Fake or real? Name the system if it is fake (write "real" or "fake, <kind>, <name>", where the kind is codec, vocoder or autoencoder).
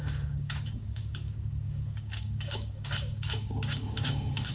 fake, codec, DAC